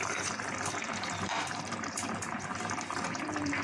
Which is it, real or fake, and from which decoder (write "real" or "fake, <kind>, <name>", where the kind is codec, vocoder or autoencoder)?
fake, vocoder, BigVGAN v2